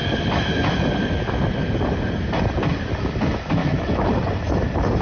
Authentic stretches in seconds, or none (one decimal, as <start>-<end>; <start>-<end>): 0.0-3.6; 4.1-5.0